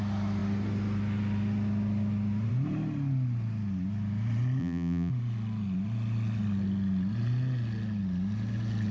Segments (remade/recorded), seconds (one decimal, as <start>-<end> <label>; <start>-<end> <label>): 0.0-4.6 recorded; 4.6-5.1 remade; 5.1-8.9 recorded